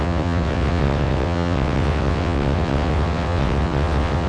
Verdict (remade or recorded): remade